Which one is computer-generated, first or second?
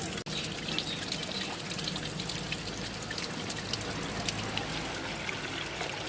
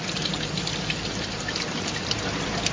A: second